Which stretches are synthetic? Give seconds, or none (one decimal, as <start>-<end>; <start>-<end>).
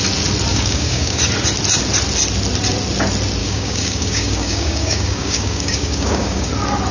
0.5-1.2; 3.4-6.5